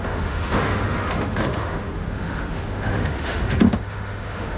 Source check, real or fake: fake